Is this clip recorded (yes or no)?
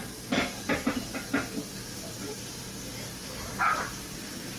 yes